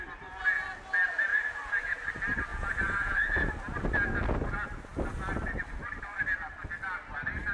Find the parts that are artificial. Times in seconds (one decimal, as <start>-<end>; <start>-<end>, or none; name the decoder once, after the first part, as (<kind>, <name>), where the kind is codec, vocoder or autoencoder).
1.3-2.1 (vocoder, Vocos); 2.5-3.5